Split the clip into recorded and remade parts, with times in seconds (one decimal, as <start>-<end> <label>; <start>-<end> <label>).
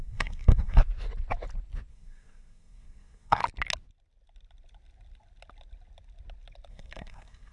0.0-0.8 remade; 0.8-1.9 recorded; 1.9-3.4 remade; 3.4-6.7 recorded; 6.7-7.5 remade